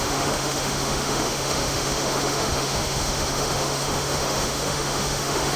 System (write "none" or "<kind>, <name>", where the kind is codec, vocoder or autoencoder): autoencoder, DAC-VAE